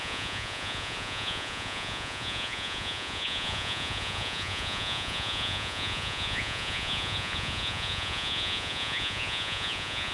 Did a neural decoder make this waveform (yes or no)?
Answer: yes